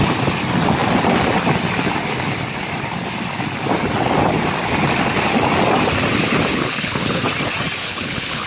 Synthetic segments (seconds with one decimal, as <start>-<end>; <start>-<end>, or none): 6.5-7.2; 7.8-8.5